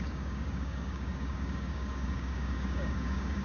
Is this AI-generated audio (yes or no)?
yes